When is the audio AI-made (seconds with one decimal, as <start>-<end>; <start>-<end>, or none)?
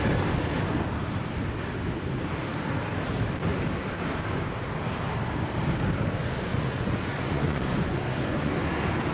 6.5-8.5